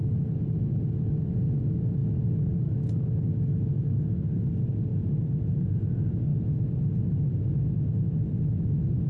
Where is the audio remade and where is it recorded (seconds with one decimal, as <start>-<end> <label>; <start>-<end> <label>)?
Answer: 0.0-4.9 recorded; 4.9-5.8 remade; 5.8-9.1 recorded